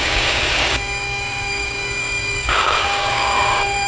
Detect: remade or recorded remade